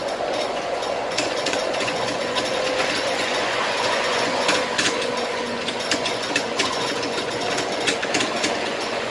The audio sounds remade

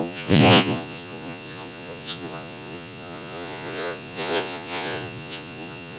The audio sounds remade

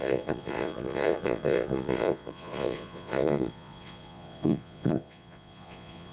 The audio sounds remade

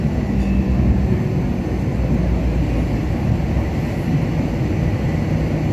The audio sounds recorded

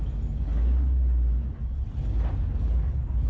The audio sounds recorded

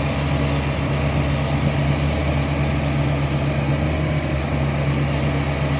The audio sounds recorded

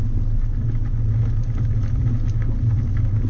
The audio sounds recorded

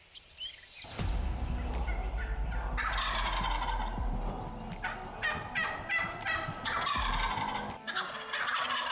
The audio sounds recorded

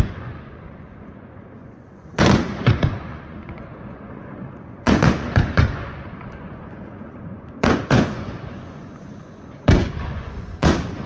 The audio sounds remade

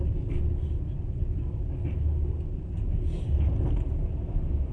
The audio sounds recorded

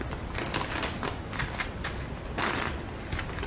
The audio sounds recorded